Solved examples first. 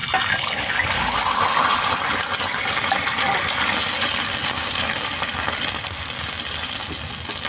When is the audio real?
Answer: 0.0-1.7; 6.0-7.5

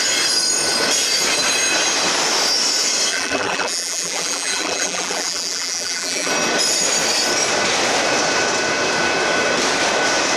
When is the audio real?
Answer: 0.0-3.1; 6.3-10.4

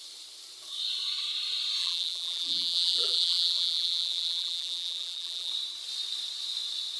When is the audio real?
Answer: 0.0-1.8; 5.5-7.0

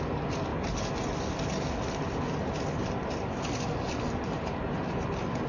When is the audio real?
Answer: 0.0-5.5

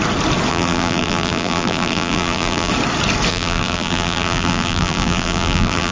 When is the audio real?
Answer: 0.0-0.5; 2.7-3.3

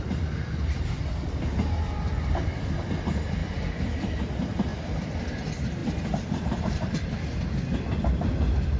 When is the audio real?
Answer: 0.0-3.4; 4.2-4.7; 5.2-5.8; 7.4-8.8

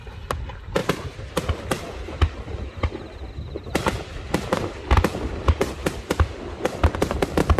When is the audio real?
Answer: 0.0-0.8; 1.4-5.1; 5.9-7.6